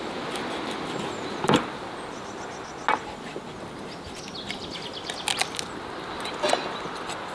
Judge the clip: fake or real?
real